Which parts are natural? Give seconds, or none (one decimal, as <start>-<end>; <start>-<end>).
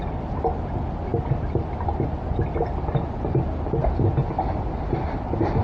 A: 0.0-5.6